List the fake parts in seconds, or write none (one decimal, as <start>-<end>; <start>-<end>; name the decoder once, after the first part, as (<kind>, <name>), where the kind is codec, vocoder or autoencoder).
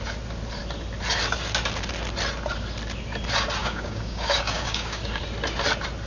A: 3.6-5.2 (codec, DAC)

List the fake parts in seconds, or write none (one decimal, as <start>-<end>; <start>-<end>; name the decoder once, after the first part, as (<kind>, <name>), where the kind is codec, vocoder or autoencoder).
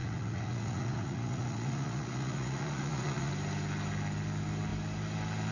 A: 0.0-3.3 (vocoder, Vocos)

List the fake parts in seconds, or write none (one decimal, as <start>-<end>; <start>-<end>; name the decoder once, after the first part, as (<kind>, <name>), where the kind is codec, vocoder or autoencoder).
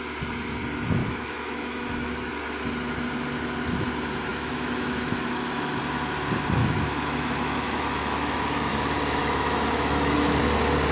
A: 1.0-2.3 (autoencoder, DAC-VAE); 4.3-5.8; 6.6-8.7; 9.2-10.4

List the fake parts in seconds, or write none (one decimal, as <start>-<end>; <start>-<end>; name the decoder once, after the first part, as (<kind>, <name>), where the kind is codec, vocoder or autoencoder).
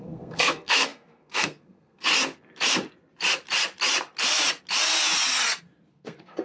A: 0.0-2.1 (codec, SNAC); 5.9-6.4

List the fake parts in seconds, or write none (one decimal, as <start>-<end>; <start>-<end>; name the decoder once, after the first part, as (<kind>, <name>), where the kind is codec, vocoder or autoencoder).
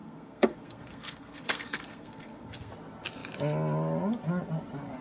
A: 0.0-2.7 (codec, SNAC)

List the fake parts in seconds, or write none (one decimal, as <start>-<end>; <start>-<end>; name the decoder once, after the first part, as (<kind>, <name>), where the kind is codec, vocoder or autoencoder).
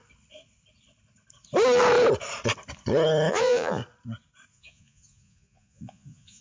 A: 3.3-3.8 (vocoder, Vocos); 4.5-6.4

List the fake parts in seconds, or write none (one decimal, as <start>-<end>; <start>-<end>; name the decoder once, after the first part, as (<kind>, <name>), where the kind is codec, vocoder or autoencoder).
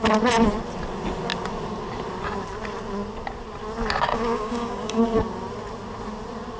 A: 4.1-5.0 (codec, DAC)